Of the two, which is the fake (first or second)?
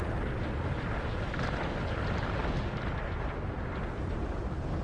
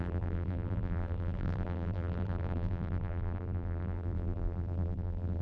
second